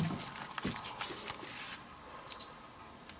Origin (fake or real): real